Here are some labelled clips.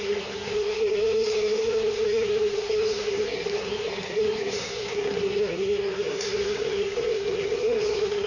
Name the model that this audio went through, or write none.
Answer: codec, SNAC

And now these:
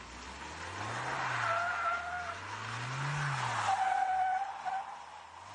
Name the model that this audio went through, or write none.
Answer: none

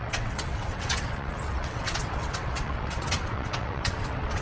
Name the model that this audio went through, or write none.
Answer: vocoder, WaveNeXt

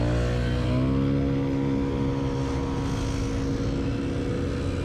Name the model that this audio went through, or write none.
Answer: none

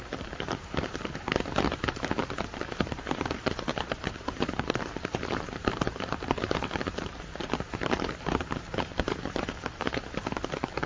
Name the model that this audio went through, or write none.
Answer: vocoder, BigVGAN v2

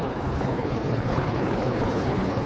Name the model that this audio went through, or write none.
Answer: codec, HILCodec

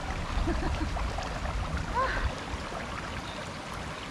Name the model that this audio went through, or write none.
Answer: none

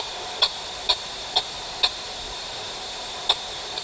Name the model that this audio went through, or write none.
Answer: none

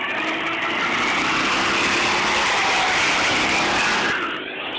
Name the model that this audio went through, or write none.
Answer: none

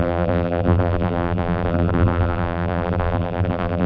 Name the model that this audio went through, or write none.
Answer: vocoder, BigVGAN v2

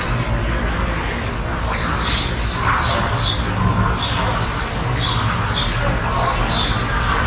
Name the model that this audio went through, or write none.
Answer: none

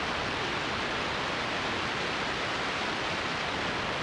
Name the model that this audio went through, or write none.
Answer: none